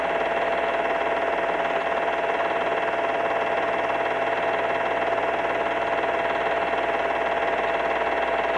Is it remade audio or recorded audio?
recorded